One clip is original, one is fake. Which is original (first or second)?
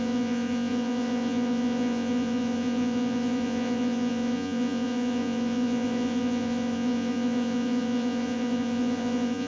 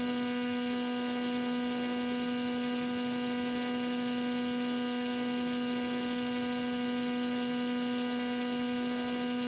second